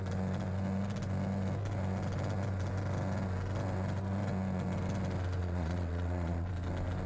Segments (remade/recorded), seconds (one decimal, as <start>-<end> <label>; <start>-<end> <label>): 0.0-5.4 recorded; 5.4-6.5 remade; 6.5-7.1 recorded